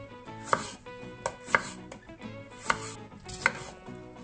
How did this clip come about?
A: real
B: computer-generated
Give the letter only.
A